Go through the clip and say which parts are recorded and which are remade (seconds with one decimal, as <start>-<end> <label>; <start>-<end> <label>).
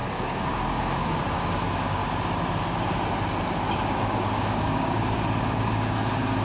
0.0-2.0 remade; 2.0-3.7 recorded; 3.7-6.4 remade